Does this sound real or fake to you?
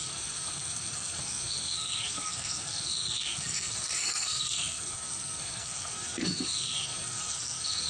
fake